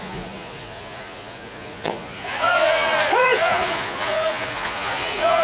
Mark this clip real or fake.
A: fake